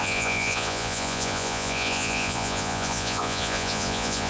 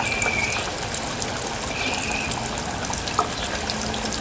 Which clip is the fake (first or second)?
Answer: first